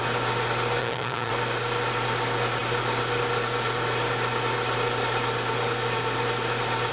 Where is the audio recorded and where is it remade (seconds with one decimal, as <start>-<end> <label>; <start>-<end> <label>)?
0.0-0.8 recorded; 0.8-1.3 remade; 1.3-6.9 recorded